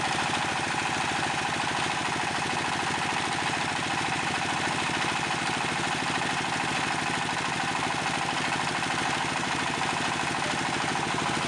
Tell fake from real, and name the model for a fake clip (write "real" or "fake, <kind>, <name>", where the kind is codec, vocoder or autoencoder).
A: real